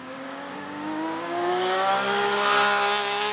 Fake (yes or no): yes